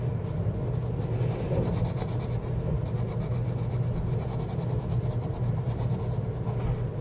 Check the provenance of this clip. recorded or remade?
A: recorded